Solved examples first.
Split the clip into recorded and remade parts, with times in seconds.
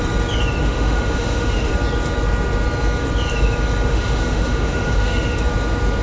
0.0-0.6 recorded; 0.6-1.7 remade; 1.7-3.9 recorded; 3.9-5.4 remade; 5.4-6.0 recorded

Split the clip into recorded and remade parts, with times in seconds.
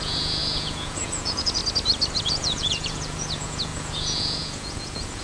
0.0-1.6 remade; 1.6-2.2 recorded; 2.2-5.2 remade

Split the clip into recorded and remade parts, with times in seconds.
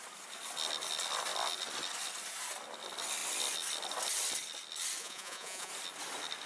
0.0-5.0 recorded; 5.0-5.7 remade; 5.7-6.5 recorded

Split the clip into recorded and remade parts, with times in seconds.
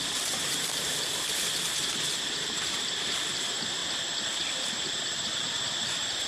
0.0-3.8 remade; 3.8-4.7 recorded; 4.7-6.3 remade